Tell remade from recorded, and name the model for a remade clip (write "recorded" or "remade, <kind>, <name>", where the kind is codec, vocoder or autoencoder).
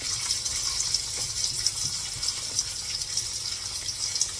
recorded